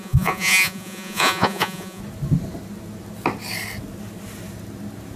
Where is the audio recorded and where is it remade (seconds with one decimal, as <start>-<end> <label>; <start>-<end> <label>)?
0.0-2.0 remade; 2.0-5.2 recorded